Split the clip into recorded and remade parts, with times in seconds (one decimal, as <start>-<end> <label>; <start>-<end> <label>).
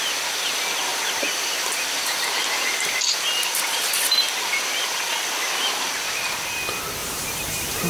0.0-7.0 recorded; 7.0-7.9 remade